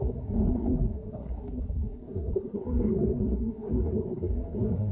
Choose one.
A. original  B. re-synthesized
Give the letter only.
B